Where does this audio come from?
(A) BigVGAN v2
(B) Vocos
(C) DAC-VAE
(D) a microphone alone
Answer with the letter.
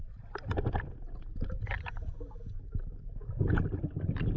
D